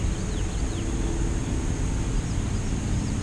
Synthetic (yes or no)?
no